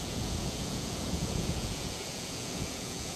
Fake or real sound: fake